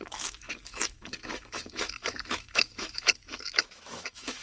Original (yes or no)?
no